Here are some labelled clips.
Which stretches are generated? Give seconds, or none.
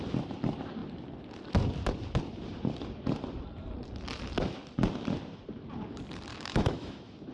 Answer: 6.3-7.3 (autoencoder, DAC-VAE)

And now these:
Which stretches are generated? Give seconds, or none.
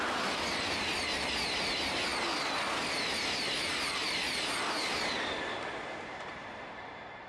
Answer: none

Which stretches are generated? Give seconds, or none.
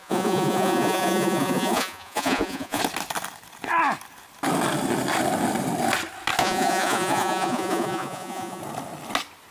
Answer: 0.0-2.8 (vocoder, Vocos); 6.4-8.6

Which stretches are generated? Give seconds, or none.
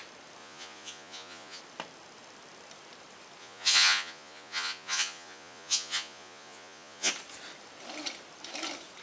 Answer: 0.4-1.6 (vocoder, Vocos); 3.4-7.1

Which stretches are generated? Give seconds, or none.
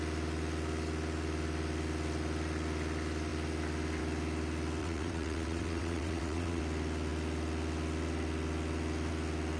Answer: 4.8-6.6 (vocoder, WaveNeXt)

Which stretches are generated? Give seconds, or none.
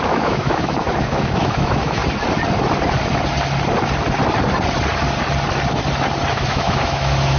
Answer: 0.0-2.0 (autoencoder, DAC-VAE); 6.3-7.4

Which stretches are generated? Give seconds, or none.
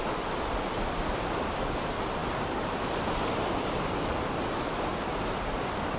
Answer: none